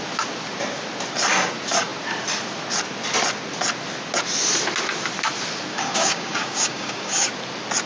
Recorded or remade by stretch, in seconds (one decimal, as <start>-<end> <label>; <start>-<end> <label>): 0.0-5.7 recorded; 5.7-7.3 remade; 7.3-7.9 recorded